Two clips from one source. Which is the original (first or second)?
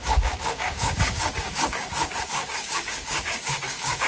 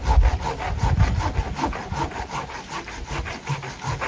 second